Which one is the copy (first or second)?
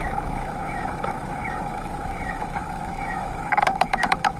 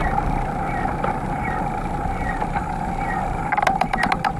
first